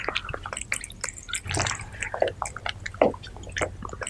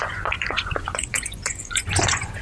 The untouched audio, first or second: first